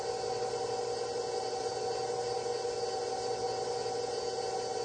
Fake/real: real